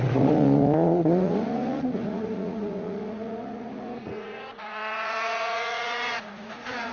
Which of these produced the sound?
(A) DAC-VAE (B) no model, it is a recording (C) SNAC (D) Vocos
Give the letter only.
D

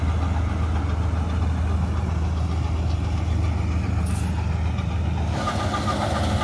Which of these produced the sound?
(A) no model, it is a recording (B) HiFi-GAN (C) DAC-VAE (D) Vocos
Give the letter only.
A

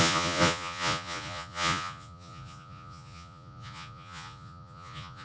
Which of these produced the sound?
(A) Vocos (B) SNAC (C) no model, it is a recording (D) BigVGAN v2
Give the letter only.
A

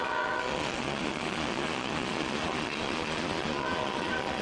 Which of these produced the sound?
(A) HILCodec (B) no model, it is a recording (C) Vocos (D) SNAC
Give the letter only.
C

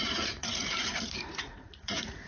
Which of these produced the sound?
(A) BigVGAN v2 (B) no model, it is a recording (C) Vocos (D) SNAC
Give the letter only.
C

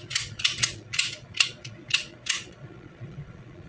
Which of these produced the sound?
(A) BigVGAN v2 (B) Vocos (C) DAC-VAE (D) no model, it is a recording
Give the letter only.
B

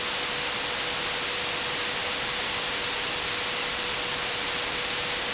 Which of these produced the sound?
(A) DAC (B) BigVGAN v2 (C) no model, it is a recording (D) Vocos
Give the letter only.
C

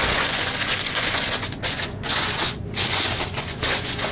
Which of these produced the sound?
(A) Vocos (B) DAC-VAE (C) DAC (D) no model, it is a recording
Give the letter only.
A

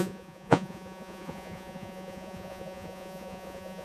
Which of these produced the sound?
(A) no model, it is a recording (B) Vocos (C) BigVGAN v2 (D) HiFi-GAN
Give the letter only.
B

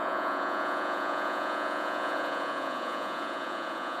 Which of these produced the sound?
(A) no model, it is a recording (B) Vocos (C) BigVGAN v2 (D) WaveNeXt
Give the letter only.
B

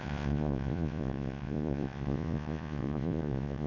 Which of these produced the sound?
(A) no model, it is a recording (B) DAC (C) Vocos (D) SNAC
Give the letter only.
C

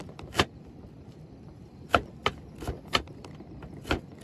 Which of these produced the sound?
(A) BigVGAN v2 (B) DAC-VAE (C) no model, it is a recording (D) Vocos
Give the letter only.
C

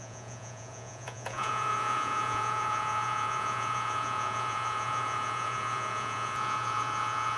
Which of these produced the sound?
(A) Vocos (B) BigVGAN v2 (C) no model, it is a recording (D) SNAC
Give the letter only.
A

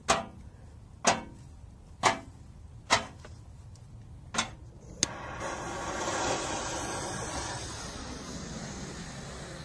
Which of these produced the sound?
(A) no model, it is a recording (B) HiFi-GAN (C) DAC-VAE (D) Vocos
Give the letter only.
A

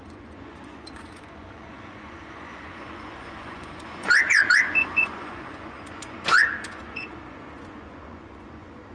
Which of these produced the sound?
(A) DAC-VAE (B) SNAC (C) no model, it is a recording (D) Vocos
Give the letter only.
D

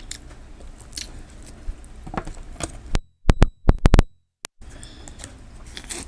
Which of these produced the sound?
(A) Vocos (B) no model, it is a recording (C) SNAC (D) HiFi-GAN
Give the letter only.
B